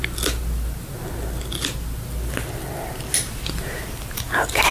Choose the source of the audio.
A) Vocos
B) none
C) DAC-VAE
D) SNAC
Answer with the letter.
B